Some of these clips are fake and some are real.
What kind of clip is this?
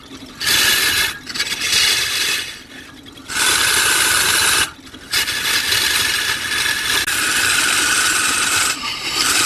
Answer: real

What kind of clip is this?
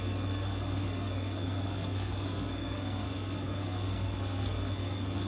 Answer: fake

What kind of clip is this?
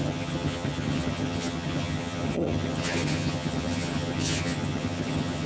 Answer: fake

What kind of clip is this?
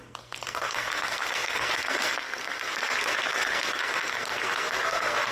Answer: fake